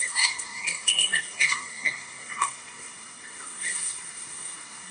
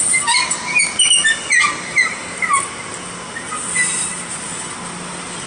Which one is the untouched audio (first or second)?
second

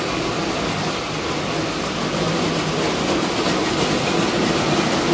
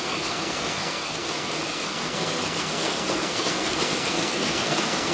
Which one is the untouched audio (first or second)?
first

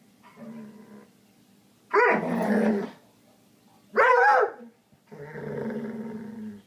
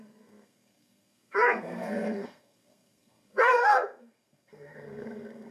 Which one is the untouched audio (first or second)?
first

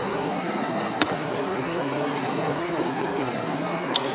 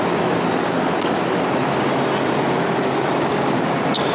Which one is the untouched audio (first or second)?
second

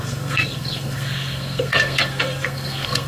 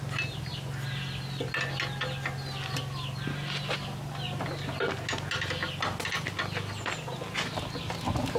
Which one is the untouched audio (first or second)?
second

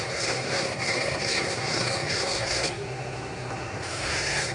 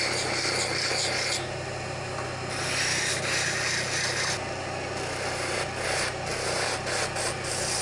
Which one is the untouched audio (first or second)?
second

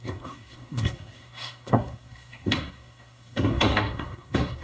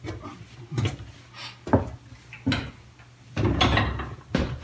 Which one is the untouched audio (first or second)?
second